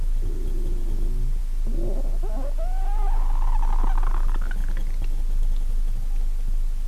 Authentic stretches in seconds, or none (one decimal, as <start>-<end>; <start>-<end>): 0.0-6.9